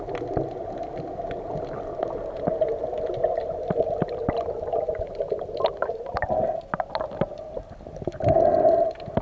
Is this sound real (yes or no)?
yes